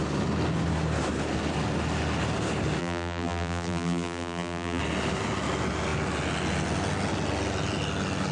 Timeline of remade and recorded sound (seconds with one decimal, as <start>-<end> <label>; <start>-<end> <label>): 0.0-2.8 recorded; 2.8-4.8 remade; 4.8-8.3 recorded

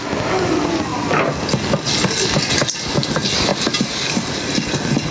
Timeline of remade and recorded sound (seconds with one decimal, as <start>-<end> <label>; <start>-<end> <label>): 0.0-5.1 recorded

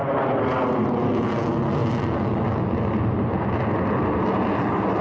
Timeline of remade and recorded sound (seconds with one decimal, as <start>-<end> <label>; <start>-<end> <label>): 0.0-5.0 recorded